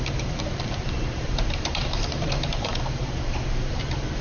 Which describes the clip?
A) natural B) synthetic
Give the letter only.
B